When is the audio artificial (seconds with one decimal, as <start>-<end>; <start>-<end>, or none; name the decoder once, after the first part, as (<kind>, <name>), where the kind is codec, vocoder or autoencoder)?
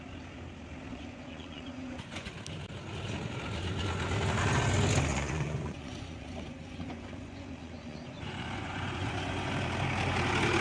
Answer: 0.9-2.3 (vocoder, Vocos); 5.1-9.5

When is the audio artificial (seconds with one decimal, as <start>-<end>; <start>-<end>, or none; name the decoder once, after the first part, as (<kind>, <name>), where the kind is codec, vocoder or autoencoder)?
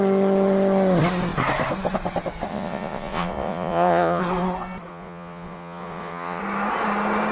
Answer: 2.5-4.2 (vocoder, Vocos); 4.9-6.4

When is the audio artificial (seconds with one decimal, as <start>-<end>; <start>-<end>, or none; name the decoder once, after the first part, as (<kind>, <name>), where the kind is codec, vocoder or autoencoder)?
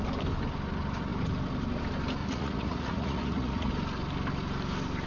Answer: 2.2-3.7 (vocoder, Vocos)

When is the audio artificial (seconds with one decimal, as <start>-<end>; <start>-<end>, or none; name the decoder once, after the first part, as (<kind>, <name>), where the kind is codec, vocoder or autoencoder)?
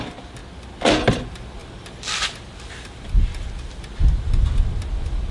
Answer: none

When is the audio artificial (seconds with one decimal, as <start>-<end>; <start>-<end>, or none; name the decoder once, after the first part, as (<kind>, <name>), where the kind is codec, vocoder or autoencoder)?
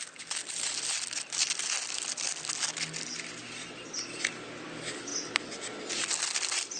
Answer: none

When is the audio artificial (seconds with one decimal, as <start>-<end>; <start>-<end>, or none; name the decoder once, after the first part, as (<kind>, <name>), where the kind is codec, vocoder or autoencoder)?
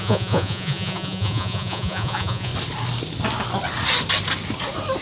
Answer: 0.0-2.5 (vocoder, Vocos)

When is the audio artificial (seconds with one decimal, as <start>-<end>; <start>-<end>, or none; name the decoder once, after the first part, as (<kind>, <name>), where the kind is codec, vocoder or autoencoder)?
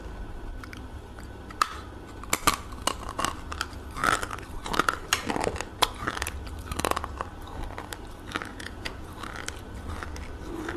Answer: 8.5-9.1 (vocoder, Vocos)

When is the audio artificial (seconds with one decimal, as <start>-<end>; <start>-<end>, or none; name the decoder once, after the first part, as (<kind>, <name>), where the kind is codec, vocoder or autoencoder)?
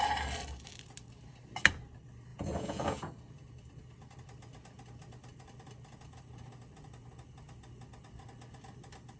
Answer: 2.3-3.1 (vocoder, Vocos)